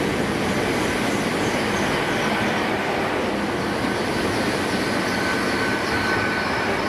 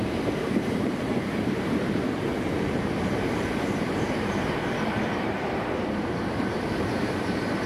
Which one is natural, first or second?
first